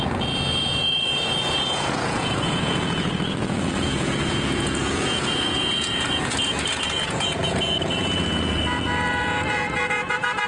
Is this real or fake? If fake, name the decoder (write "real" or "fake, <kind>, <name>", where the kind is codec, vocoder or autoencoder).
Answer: fake, vocoder, Vocos